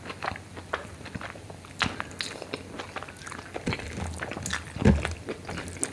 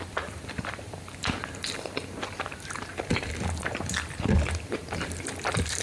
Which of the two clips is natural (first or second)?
first